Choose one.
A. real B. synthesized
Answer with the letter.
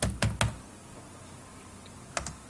A